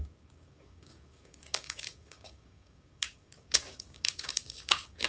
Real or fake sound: fake